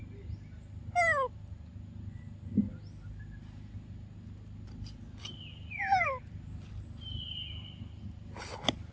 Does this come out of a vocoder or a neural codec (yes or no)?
no